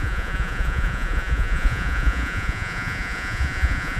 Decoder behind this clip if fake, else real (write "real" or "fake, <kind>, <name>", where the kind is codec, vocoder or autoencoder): fake, vocoder, Vocos